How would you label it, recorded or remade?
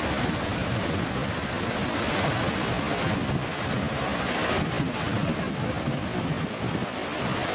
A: recorded